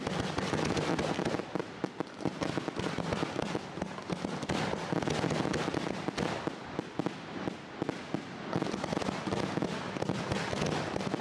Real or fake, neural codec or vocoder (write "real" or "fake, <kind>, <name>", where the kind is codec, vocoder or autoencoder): real